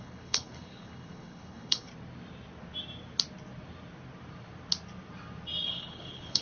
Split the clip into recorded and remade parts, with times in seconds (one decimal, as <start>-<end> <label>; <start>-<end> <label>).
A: 0.0-1.9 remade; 1.9-5.7 recorded; 5.7-6.4 remade